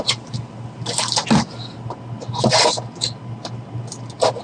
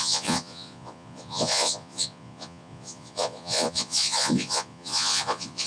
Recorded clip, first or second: first